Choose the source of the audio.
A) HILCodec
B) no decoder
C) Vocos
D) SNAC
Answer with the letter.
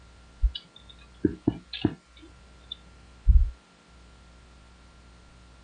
B